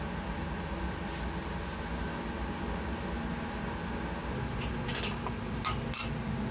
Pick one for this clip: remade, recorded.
recorded